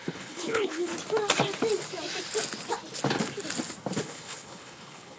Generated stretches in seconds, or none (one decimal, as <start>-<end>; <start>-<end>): 0.0-0.9; 4.0-5.2

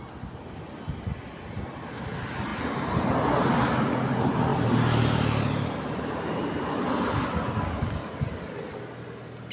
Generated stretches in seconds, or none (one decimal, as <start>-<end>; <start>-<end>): 2.5-3.3; 4.5-6.8